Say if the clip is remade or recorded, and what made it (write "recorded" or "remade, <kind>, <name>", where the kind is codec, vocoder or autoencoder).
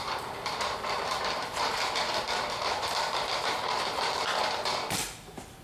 remade, vocoder, BigVGAN v2